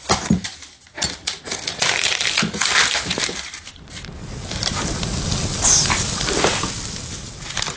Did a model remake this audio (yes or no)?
no